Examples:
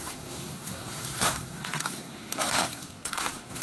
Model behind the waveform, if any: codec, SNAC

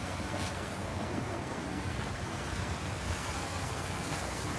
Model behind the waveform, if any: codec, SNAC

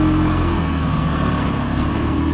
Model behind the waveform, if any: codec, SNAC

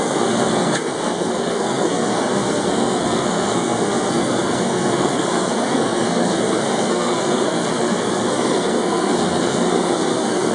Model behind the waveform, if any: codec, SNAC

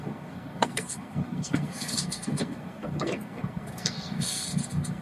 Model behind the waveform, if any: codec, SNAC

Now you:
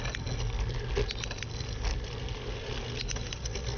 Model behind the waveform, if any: none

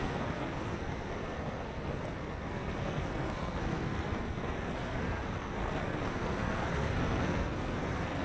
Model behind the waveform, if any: codec, SNAC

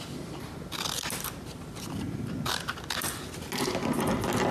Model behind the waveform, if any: none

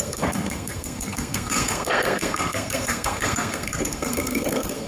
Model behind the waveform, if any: codec, SNAC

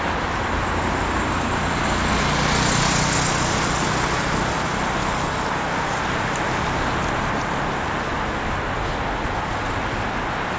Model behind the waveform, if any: none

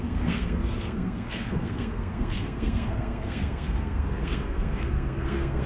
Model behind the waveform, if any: codec, SNAC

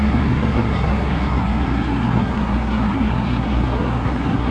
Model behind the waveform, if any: codec, SNAC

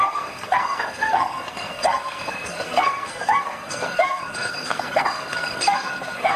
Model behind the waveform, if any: codec, SNAC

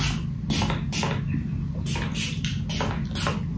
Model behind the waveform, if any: none